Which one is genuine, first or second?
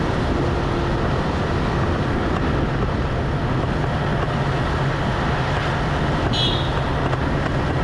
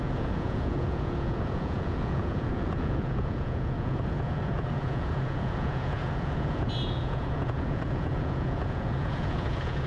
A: first